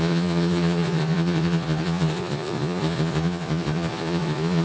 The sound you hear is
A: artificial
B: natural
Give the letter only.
A